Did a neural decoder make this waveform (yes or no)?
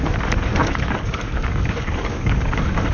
yes